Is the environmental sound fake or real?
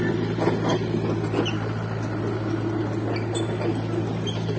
real